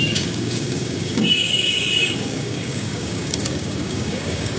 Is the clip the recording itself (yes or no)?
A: no